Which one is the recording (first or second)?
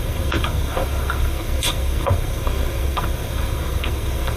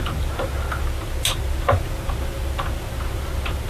second